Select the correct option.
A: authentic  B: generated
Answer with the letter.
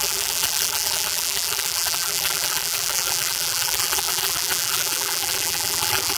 B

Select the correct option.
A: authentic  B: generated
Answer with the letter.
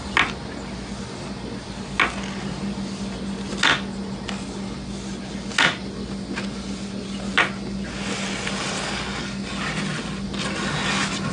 A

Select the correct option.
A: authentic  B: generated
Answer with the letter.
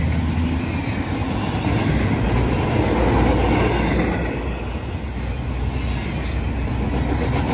A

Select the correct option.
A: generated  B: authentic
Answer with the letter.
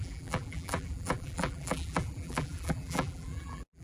A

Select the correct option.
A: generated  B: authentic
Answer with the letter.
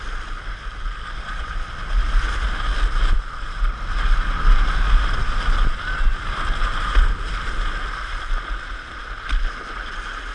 B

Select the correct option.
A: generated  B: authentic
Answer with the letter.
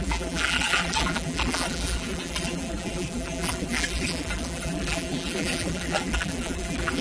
A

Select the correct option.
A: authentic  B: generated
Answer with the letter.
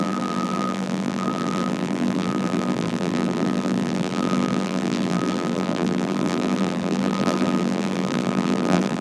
B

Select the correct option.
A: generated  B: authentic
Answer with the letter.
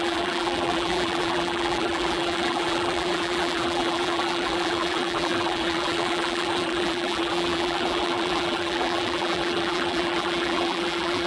A